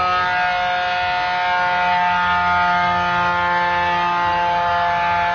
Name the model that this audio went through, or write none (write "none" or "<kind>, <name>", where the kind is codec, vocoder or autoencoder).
none